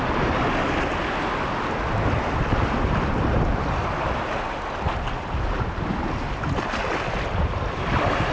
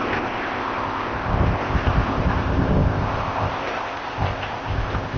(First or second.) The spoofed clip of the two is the second